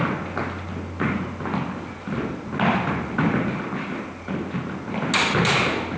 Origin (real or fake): real